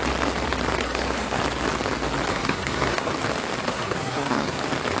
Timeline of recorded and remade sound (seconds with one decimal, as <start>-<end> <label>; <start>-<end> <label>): 0.0-0.8 recorded; 0.8-1.4 remade; 1.4-2.3 recorded; 2.3-3.1 remade; 3.1-3.7 recorded; 3.7-4.6 remade; 4.6-5.0 recorded